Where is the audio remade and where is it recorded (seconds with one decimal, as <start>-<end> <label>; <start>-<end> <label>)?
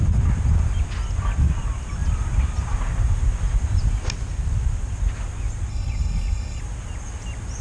0.0-5.7 recorded; 5.7-6.6 remade; 6.6-7.6 recorded